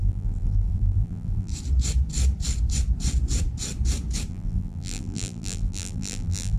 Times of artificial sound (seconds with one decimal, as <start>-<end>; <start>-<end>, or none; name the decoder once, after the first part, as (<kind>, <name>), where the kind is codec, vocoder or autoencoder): 0.0-1.5 (vocoder, BigVGAN v2); 4.3-6.6